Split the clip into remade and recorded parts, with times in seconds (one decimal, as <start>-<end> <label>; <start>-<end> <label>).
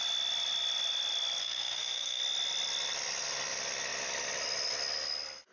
0.0-1.4 recorded; 1.4-2.2 remade; 2.2-5.5 recorded